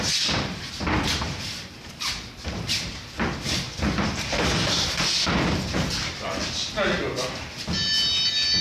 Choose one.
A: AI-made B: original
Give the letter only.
B